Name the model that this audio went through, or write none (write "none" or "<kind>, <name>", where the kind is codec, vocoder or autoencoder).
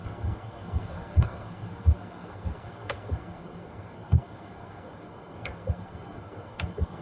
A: codec, SNAC